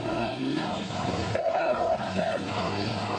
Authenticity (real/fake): fake